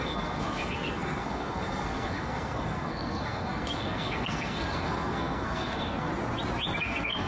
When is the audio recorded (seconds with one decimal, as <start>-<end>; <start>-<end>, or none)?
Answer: 6.1-6.8